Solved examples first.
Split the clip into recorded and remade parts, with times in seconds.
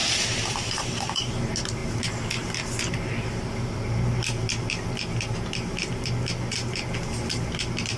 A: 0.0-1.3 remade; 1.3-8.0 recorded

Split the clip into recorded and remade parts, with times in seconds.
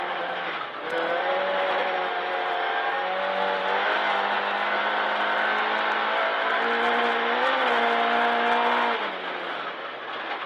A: 0.0-10.5 recorded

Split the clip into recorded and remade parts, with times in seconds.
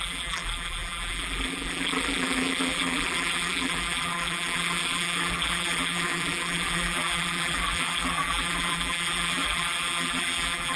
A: 0.0-10.8 remade